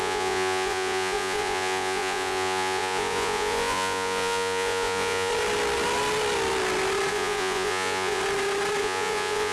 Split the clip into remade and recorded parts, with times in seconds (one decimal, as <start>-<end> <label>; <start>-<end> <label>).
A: 0.0-5.3 remade; 5.3-7.1 recorded; 7.1-8.2 remade; 8.2-8.8 recorded; 8.8-9.5 remade